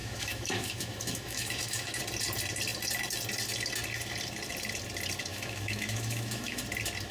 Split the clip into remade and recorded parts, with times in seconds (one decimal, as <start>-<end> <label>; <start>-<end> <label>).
0.0-2.0 remade; 2.0-5.3 recorded; 5.3-6.6 remade; 6.6-7.1 recorded